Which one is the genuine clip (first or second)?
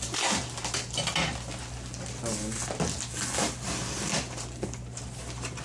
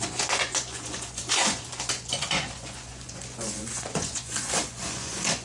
first